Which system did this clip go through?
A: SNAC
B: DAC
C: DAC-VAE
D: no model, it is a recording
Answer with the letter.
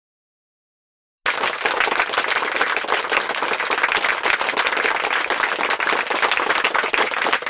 D